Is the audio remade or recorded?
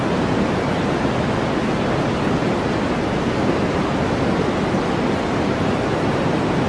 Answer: recorded